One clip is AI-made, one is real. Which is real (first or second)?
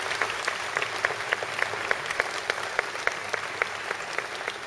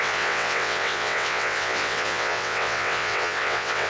first